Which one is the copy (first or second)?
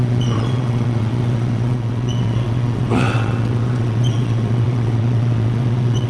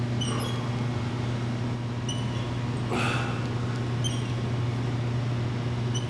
first